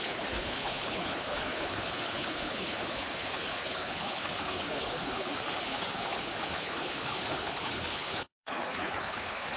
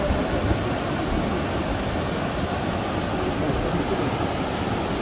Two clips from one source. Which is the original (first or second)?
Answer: second